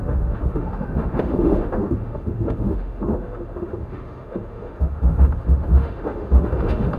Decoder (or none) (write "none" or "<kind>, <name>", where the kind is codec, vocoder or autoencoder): autoencoder, DAC-VAE